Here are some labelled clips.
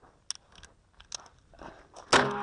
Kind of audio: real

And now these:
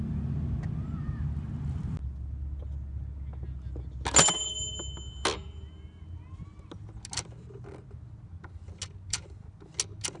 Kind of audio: real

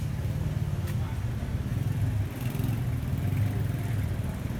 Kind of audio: real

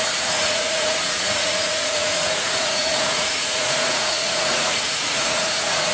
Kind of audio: fake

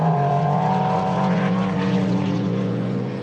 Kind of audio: fake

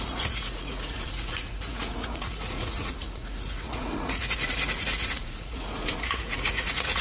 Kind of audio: fake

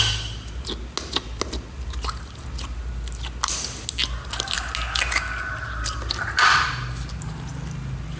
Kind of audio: real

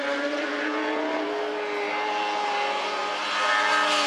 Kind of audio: real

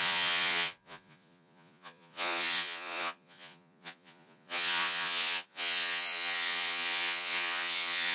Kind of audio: fake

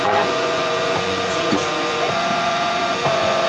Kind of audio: fake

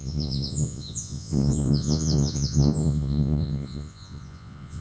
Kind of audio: fake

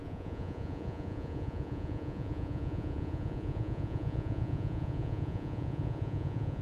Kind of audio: fake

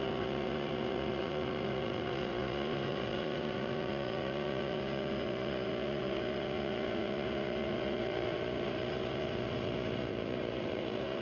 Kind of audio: fake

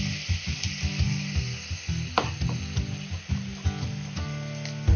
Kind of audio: real